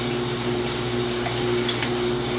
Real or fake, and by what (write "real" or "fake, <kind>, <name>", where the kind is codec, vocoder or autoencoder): real